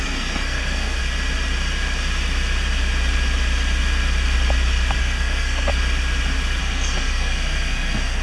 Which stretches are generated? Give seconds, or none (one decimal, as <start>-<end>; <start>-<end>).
0.0-1.0; 5.0-5.7; 6.6-8.2